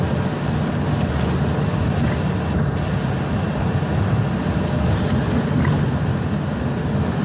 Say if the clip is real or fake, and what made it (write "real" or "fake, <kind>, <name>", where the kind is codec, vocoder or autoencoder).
real